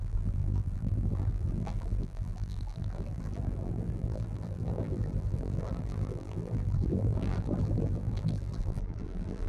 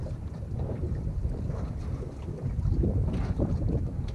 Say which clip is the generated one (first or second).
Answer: first